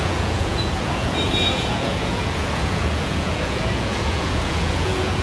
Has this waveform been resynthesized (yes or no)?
yes